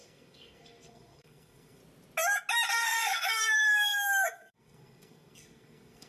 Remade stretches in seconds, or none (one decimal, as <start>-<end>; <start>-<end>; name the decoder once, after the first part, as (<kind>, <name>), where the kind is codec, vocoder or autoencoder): 0.0-1.8 (codec, SNAC); 2.7-6.1